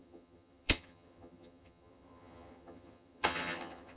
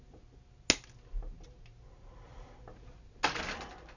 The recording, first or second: second